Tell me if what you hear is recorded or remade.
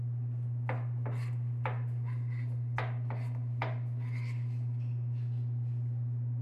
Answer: recorded